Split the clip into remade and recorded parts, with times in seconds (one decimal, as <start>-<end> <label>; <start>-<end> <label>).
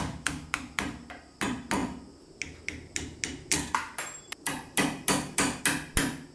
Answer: 0.0-6.3 recorded